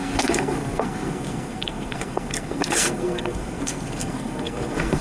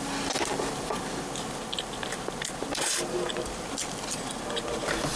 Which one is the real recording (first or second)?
second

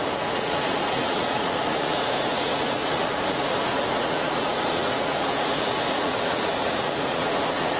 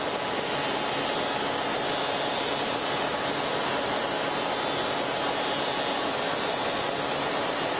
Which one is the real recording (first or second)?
second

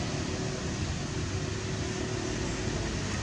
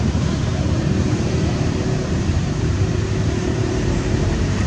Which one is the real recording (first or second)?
first